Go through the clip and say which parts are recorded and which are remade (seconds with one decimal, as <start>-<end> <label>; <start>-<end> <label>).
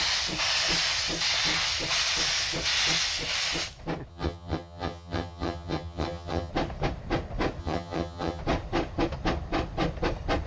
0.0-4.1 recorded; 4.1-6.5 remade; 6.5-7.6 recorded; 7.6-8.4 remade; 8.4-10.5 recorded